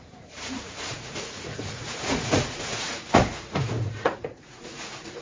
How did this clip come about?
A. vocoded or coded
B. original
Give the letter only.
A